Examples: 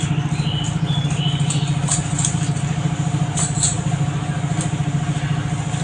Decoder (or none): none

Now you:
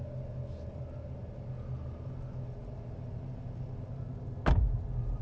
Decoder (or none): none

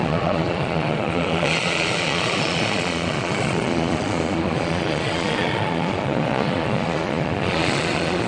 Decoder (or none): vocoder, Vocos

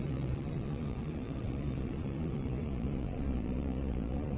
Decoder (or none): vocoder, Vocos